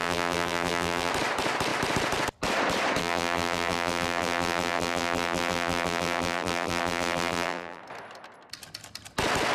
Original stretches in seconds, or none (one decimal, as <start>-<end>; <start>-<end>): 1.1-3.0; 7.8-9.5